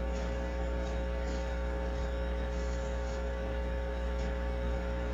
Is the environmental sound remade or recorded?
remade